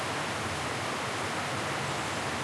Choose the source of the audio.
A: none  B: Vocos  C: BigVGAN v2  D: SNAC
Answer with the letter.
A